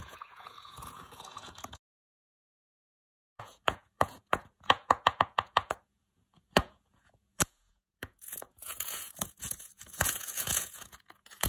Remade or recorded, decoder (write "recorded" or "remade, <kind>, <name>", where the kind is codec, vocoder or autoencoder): remade, vocoder, Vocos